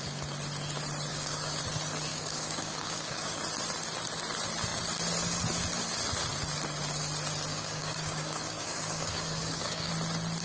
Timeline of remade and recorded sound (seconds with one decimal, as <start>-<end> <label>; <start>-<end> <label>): 0.0-1.1 recorded; 1.1-1.6 remade; 1.6-2.1 recorded; 2.1-3.4 remade; 3.4-7.5 recorded; 7.5-9.9 remade; 9.9-10.4 recorded